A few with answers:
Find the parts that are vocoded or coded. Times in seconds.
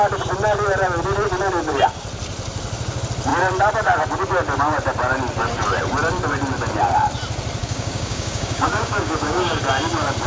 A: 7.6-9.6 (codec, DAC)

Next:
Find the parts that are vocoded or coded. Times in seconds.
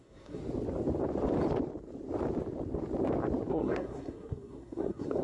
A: 0.0-0.4 (codec, SNAC); 3.5-5.2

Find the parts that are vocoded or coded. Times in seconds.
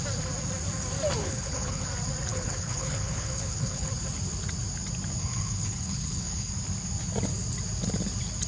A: 1.2-1.9 (codec, HILCodec); 2.3-3.9; 5.2-6.5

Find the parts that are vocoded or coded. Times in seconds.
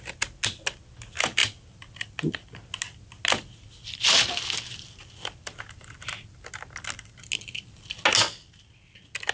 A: none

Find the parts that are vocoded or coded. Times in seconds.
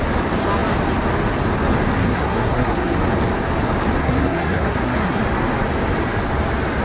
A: 2.0-3.0 (codec, SNAC); 4.0-5.2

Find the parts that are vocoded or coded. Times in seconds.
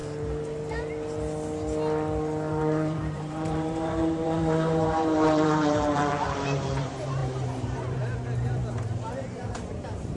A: 2.5-10.2 (vocoder, BigVGAN v2)